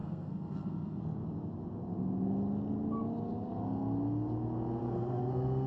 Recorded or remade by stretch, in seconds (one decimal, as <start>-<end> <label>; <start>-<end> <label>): 0.0-1.0 remade; 1.0-4.8 recorded; 4.8-5.7 remade